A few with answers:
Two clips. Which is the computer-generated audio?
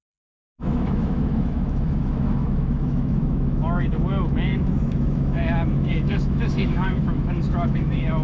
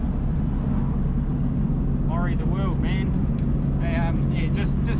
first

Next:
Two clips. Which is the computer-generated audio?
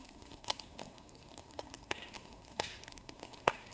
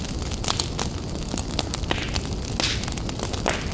first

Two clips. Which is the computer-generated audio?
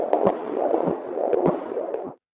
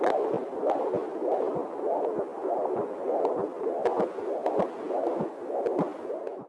first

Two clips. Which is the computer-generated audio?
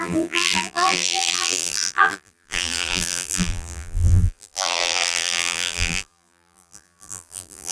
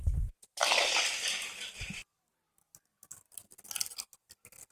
first